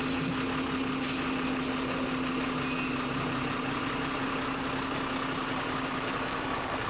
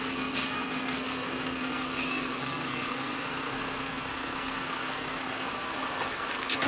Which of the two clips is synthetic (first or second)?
second